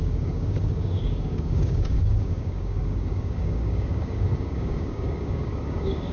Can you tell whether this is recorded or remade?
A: remade